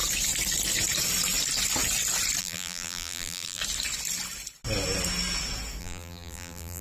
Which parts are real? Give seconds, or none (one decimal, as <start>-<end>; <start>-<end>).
0.0-2.4; 3.6-5.8